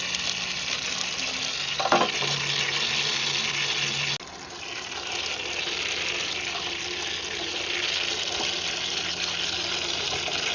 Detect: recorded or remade recorded